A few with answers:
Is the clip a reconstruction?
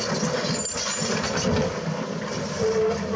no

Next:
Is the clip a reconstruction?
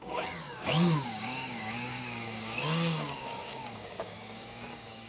yes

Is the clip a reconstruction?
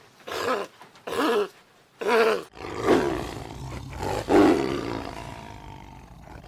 no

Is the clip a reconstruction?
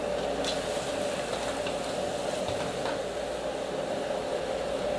no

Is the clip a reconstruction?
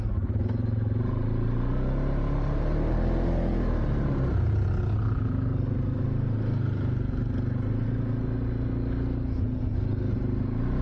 no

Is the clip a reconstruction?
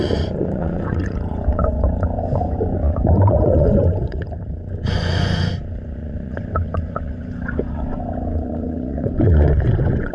yes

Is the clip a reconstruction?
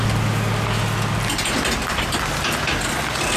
no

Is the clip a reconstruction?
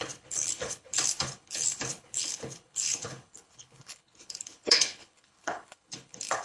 yes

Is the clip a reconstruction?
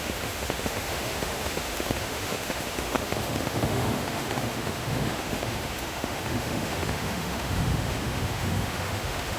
yes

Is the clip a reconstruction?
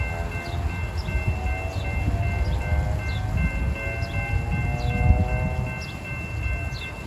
no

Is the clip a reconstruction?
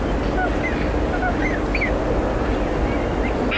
no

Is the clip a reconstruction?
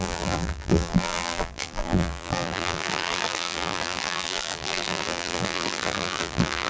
yes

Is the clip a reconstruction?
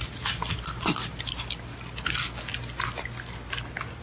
no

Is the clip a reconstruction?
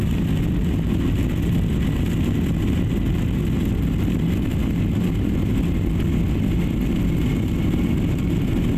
no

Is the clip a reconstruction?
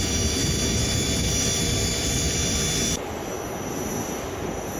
no